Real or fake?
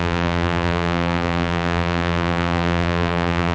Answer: fake